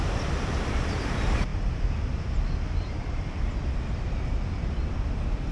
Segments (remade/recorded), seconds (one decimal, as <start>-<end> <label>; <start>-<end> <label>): 0.0-5.5 recorded